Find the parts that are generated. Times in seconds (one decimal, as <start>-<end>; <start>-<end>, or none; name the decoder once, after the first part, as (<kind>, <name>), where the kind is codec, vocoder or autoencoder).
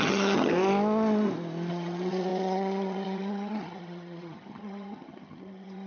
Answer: 0.0-0.5 (vocoder, HiFi-GAN); 1.7-5.9